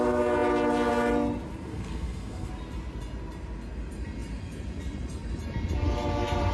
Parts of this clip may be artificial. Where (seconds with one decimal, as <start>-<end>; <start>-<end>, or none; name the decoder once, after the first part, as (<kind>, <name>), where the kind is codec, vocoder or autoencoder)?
1.7-2.5 (codec, SNAC)